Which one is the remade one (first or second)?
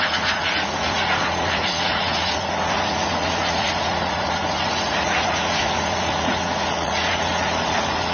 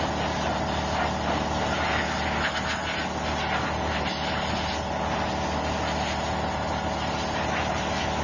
first